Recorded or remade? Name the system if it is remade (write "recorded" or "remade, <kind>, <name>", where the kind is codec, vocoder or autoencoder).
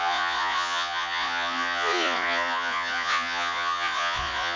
remade, vocoder, Vocos